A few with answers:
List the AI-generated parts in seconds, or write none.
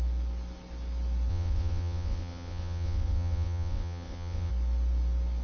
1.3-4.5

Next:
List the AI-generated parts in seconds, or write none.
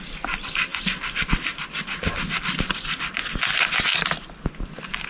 0.7-1.2; 3.9-4.5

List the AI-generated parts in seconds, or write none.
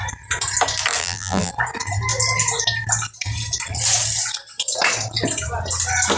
1.0-1.5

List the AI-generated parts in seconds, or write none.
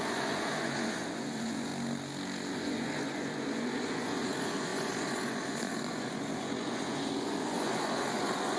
0.0-1.7; 2.5-8.6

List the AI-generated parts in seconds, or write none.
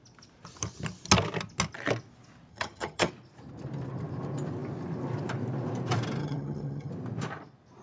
2.5-3.1; 6.2-6.9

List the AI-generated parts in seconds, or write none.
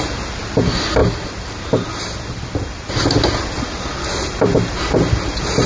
none